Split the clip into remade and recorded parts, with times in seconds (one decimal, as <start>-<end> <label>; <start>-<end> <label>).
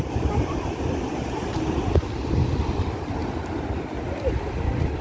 0.0-5.0 recorded